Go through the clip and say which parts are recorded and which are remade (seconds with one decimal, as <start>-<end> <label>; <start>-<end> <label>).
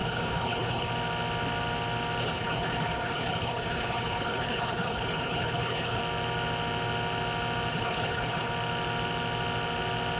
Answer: 0.0-0.9 remade; 0.9-2.2 recorded; 2.2-6.0 remade; 6.0-7.7 recorded; 7.7-8.5 remade; 8.5-10.2 recorded